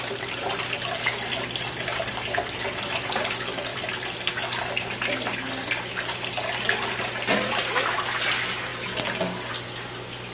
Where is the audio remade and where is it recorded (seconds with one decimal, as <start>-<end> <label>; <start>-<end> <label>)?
0.0-3.7 recorded; 3.7-4.3 remade; 4.3-8.7 recorded; 8.7-9.5 remade; 9.5-10.3 recorded